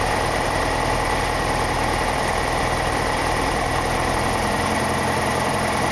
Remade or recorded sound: remade